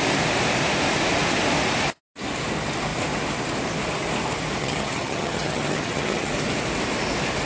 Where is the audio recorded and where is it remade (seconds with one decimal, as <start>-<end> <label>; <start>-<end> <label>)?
0.0-4.6 recorded; 4.6-6.3 remade; 6.3-7.5 recorded